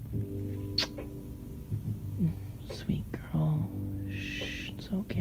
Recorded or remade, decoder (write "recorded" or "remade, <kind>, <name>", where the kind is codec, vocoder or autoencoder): recorded